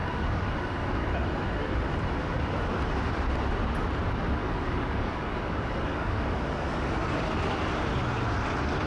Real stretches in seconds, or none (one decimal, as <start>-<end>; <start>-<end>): 1.1-4.4; 6.9-8.9

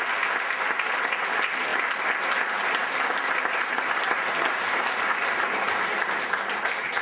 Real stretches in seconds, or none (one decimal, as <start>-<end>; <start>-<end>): 0.0-1.7; 2.2-7.0

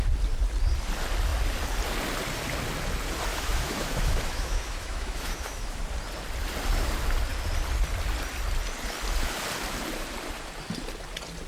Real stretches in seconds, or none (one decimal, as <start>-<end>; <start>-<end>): 0.0-3.3; 5.8-11.5